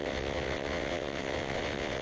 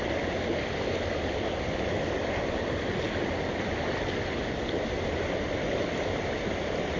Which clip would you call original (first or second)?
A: second